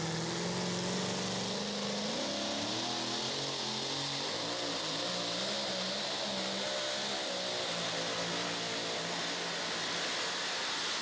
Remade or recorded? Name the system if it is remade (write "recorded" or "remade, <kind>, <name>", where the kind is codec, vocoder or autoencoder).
recorded